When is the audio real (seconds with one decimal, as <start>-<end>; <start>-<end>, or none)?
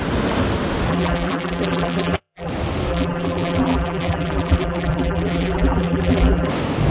0.0-0.9; 2.5-2.9; 6.5-6.9